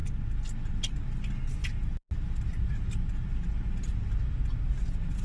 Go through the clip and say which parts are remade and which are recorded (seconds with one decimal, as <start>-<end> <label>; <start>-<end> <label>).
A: 0.0-5.2 recorded